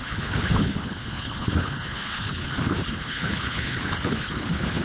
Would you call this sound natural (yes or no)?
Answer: no